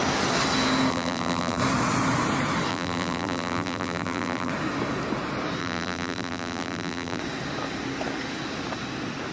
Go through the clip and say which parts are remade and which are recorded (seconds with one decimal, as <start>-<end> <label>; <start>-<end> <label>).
0.0-0.9 recorded; 0.9-1.6 remade; 1.6-2.7 recorded; 2.7-4.5 remade; 4.5-5.6 recorded; 5.6-7.2 remade; 7.2-9.3 recorded